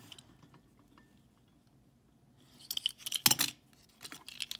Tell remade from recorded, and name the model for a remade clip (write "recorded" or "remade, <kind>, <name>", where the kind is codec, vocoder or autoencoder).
recorded